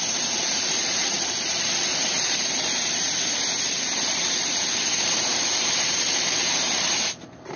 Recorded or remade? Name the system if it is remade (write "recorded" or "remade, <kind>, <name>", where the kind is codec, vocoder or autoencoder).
remade, vocoder, BigVGAN v2